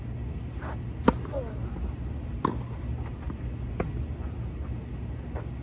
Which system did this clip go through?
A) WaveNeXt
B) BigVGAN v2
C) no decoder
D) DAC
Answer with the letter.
C